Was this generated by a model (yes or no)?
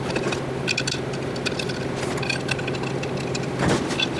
no